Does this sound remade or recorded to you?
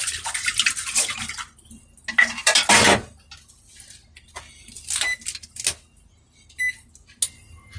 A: recorded